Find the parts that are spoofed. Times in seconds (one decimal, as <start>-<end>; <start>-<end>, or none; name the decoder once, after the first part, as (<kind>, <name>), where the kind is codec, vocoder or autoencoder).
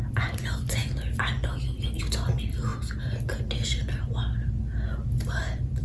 none